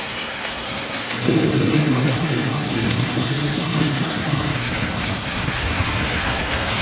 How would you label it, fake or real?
fake